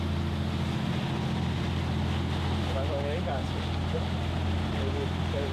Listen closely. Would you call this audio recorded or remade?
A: recorded